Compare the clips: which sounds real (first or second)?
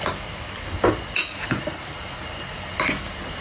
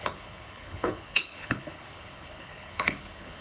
first